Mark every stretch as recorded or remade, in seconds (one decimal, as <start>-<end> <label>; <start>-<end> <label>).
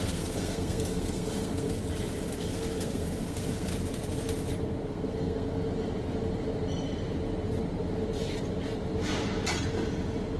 0.0-1.8 remade; 1.8-2.4 recorded; 2.4-3.7 remade; 3.7-4.9 recorded; 4.9-5.6 remade; 5.6-10.4 recorded